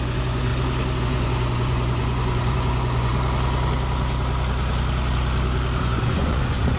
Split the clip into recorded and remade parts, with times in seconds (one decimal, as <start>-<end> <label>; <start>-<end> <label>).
0.0-0.5 remade; 0.5-1.0 recorded; 1.0-3.1 remade; 3.1-5.8 recorded; 5.8-6.8 remade